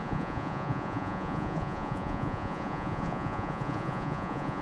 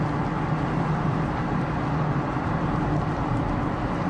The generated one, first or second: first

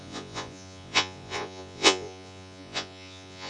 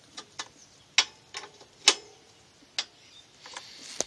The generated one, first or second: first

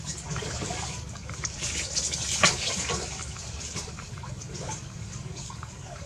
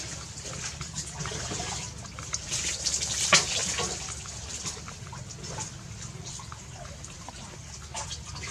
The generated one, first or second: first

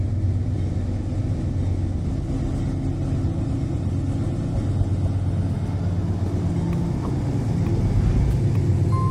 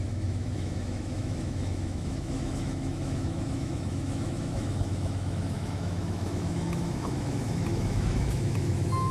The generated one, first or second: second